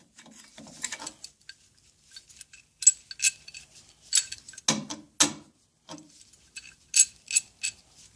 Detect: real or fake real